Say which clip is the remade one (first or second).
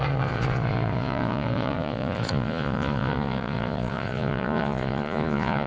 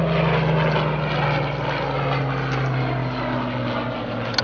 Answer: first